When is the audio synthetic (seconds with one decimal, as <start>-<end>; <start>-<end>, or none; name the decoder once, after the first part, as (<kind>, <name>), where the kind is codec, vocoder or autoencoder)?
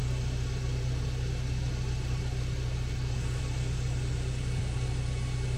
none